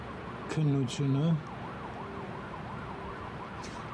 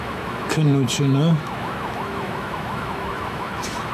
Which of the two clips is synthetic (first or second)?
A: second